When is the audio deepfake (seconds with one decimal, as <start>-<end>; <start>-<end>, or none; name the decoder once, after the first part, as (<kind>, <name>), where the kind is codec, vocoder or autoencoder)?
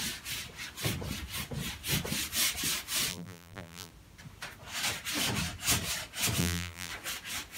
3.1-3.9 (vocoder, BigVGAN v2); 6.4-6.9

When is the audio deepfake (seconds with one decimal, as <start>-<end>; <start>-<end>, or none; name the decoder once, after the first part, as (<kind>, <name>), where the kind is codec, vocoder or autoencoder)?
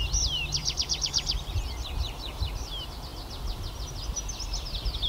0.6-2.4 (vocoder, BigVGAN v2)